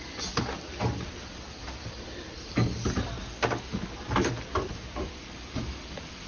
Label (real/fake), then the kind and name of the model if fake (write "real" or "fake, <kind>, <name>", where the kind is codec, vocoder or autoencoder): real